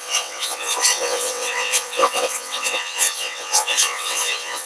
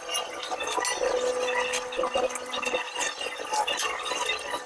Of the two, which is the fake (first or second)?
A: first